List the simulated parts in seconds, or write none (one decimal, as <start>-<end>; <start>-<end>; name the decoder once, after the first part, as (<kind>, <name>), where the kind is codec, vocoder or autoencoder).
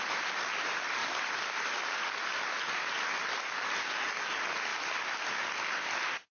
none